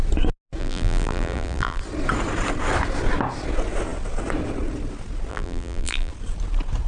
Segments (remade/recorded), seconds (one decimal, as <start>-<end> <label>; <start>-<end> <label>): 0.0-0.6 recorded; 0.6-1.8 remade; 1.8-5.3 recorded; 5.3-6.1 remade; 6.1-6.9 recorded